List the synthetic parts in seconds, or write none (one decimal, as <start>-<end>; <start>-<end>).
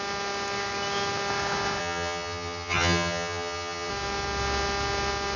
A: 1.8-3.9